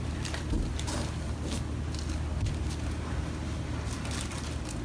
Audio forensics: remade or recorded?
recorded